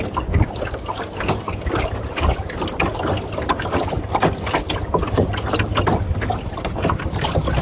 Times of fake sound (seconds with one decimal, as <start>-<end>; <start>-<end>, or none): none